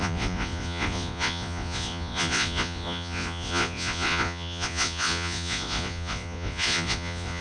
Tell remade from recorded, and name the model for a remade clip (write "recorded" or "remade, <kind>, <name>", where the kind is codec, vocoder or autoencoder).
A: remade, vocoder, Vocos